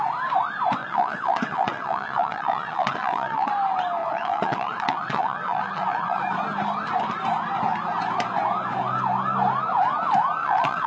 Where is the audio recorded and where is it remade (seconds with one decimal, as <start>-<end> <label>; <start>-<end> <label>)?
0.0-0.8 recorded; 0.8-3.5 remade; 3.5-4.0 recorded; 4.0-6.2 remade; 6.2-10.4 recorded; 10.4-10.9 remade